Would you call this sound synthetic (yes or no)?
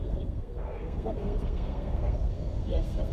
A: yes